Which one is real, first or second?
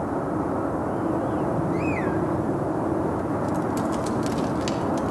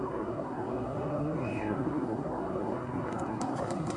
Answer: first